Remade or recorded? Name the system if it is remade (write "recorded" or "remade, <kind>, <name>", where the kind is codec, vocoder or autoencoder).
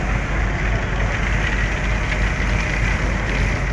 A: recorded